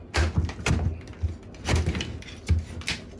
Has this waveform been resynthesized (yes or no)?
no